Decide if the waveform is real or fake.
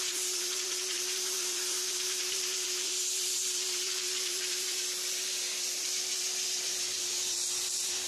fake